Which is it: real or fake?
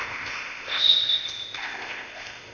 fake